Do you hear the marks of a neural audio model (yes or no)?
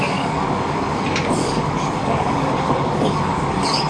yes